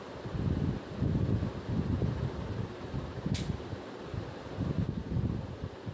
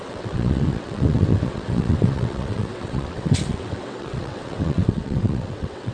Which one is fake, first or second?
second